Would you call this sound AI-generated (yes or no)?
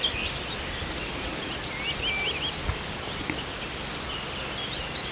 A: no